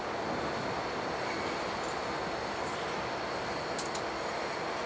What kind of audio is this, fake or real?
real